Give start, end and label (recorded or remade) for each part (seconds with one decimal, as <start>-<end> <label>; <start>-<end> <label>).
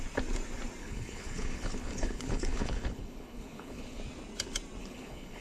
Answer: 0.0-0.8 recorded; 0.8-4.0 remade; 4.0-4.8 recorded; 4.8-5.4 remade